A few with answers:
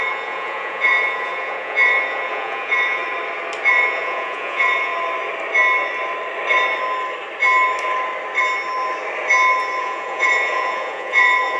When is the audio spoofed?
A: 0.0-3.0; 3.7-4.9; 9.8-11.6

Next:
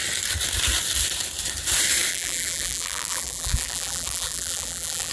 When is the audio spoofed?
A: 2.1-5.1

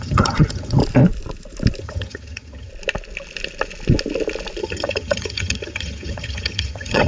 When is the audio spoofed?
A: 0.0-0.8; 1.8-2.7; 4.6-7.1

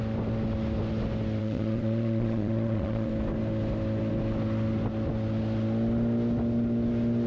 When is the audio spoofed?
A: 1.4-3.1

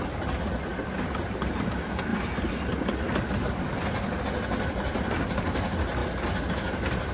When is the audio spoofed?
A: none

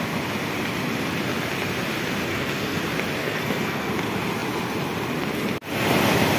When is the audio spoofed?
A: 2.3-2.8; 3.2-3.9